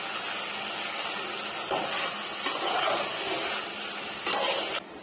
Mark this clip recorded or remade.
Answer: recorded